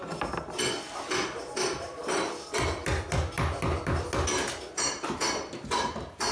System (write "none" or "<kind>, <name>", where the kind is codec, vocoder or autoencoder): none